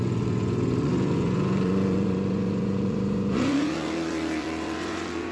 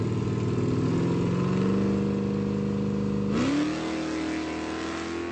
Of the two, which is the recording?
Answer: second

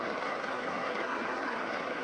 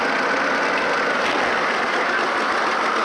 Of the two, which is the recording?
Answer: second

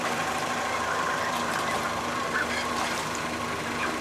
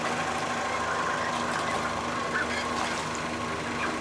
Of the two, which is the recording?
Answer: second